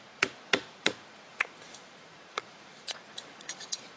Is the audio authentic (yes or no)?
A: no